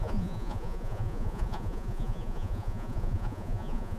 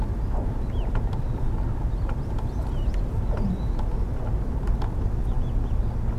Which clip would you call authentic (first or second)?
second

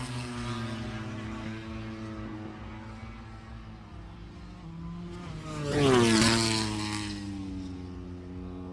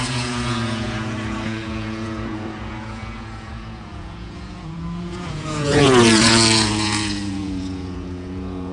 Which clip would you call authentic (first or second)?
first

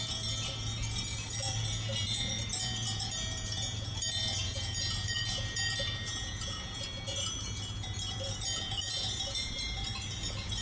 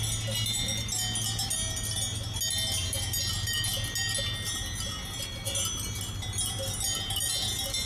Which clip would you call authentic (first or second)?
second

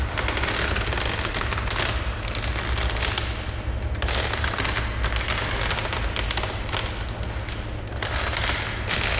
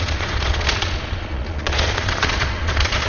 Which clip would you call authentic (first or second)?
first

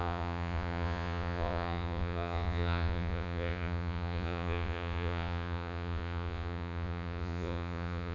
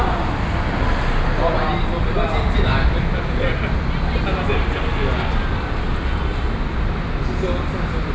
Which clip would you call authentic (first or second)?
second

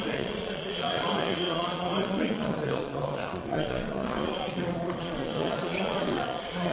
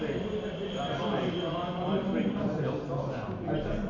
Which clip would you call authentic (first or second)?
second